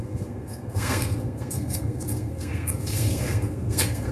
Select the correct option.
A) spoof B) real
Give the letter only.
A